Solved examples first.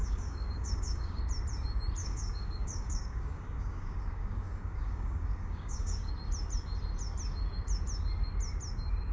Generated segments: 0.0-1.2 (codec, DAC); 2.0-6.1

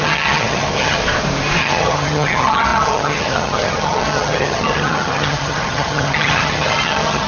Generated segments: 0.0-1.0 (vocoder, HiFi-GAN); 1.6-7.3

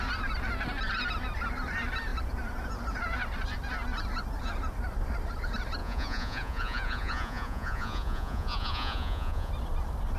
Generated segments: 5.8-9.5 (vocoder, Vocos)

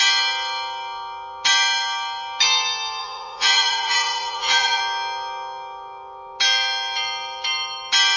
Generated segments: 3.0-4.8 (vocoder, Vocos)

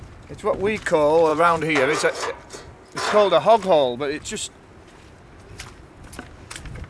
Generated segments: 1.3-2.3 (vocoder, Vocos)

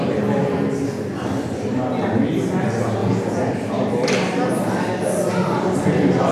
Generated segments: 3.0-3.5 (vocoder, Vocos)

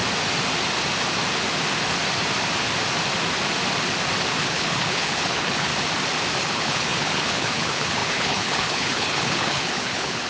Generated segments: 4.4-5.7 (codec, HILCodec); 6.4-10.3